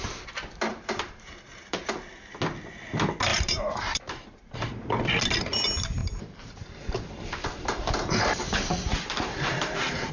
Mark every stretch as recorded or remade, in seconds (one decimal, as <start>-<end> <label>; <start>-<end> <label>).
0.0-0.7 recorded; 0.7-1.9 remade; 1.9-3.3 recorded; 3.3-4.9 remade; 4.9-6.0 recorded; 6.0-10.1 remade